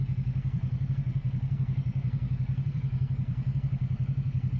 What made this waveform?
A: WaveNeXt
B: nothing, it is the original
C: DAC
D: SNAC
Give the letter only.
D